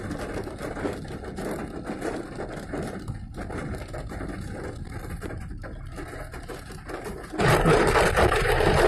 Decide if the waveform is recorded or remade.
recorded